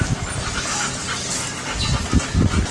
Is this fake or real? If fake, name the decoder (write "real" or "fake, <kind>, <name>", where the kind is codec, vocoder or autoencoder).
real